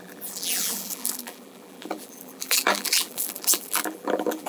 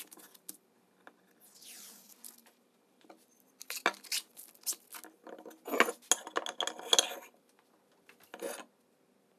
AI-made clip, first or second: first